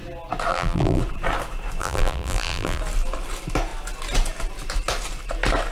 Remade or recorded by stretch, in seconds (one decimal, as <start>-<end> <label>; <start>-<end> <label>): 0.0-0.5 recorded; 0.5-1.0 remade; 1.0-1.8 recorded; 1.8-2.8 remade; 2.8-5.7 recorded